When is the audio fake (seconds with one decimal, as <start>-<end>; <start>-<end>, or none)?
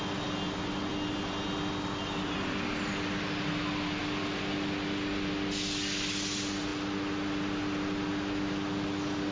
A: none